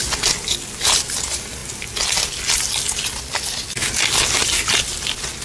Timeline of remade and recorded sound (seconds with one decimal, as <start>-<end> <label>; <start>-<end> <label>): 0.0-5.4 recorded